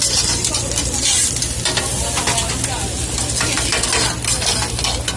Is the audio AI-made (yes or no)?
no